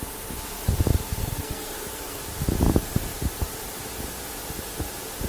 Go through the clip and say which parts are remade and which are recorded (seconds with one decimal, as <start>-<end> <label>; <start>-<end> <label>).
0.0-1.2 recorded; 1.2-2.2 remade; 2.2-5.3 recorded